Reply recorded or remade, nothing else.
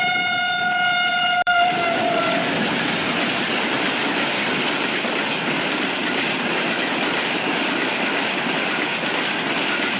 remade